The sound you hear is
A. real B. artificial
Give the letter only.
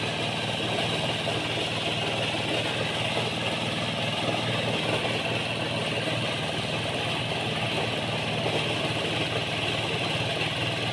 A